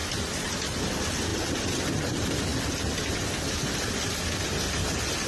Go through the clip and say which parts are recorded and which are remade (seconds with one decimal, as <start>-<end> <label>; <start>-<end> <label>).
0.0-5.3 recorded